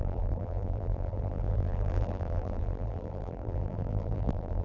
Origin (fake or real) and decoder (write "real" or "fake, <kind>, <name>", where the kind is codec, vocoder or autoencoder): fake, vocoder, BigVGAN v2